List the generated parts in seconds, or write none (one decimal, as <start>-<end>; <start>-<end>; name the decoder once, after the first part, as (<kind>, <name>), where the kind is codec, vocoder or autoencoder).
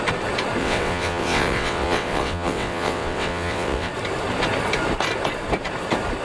0.6-3.9 (vocoder, WaveNeXt)